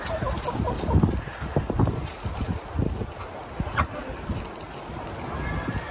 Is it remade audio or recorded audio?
recorded